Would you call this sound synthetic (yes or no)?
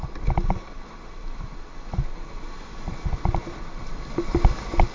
no